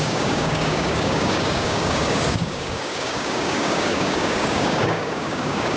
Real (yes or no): no